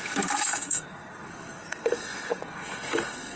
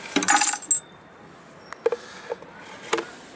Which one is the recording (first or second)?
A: second